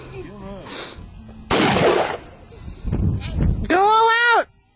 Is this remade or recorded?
recorded